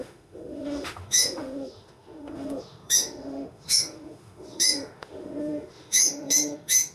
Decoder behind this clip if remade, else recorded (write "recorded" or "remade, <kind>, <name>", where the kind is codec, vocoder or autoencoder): remade, autoencoder, DAC-VAE